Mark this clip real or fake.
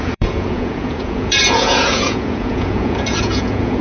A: fake